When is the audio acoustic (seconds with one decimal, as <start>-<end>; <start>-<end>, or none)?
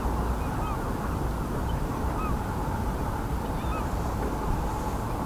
0.0-1.6; 4.6-5.3